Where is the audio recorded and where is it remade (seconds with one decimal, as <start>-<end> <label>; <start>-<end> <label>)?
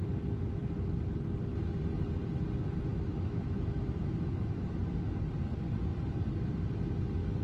0.0-2.9 recorded; 2.9-4.7 remade; 4.7-7.4 recorded